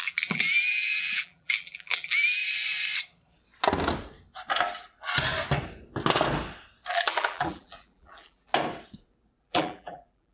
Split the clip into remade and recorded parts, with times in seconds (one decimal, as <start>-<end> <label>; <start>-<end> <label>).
0.0-2.4 remade; 2.4-6.9 recorded; 6.9-8.5 remade; 8.5-9.4 recorded; 9.4-10.3 remade